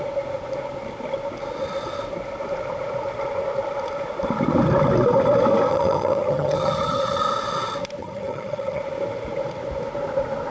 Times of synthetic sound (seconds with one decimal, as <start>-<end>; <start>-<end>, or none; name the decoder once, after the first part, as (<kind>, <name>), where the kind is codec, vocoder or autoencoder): 5.7-7.2 (vocoder, HiFi-GAN); 8.0-8.8